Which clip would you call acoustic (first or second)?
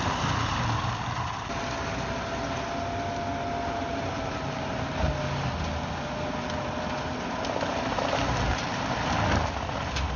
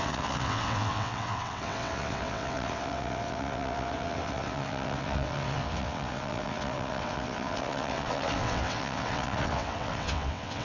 first